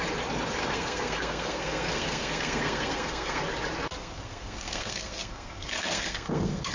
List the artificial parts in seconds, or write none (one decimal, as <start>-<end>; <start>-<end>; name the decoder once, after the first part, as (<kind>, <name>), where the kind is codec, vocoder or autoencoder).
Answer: 0.6-3.4 (codec, SNAC); 4.0-6.7